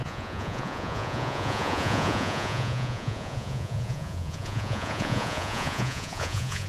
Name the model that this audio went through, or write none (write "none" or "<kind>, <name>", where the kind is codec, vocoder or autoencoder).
vocoder, Vocos